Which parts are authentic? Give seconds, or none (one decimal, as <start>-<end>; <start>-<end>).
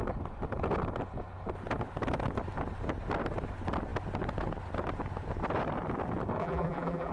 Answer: 0.0-6.4